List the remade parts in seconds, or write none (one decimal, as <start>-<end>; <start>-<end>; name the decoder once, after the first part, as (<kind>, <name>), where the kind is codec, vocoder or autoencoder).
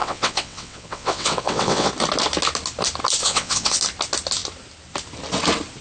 0.0-1.9 (vocoder, WaveNeXt); 3.2-3.8